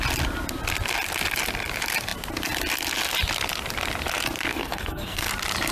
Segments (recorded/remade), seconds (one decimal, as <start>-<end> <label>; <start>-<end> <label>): 0.0-4.5 recorded; 4.5-5.3 remade; 5.3-5.7 recorded